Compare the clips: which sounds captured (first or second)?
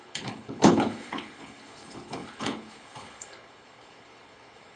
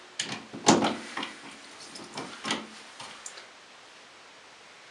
second